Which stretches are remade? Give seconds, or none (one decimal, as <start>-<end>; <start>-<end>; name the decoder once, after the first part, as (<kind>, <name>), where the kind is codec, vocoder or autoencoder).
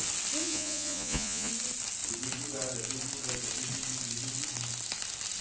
0.4-1.5 (vocoder, Vocos)